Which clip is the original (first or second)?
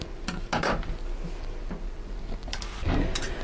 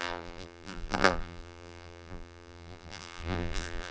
first